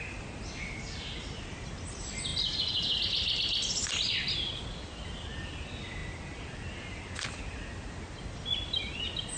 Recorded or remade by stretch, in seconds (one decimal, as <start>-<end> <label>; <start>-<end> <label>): 0.0-9.4 recorded